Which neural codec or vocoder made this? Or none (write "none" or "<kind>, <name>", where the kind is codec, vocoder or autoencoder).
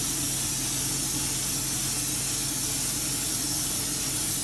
none